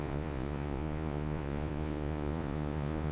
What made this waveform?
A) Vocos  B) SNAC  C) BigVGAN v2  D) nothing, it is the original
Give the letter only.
A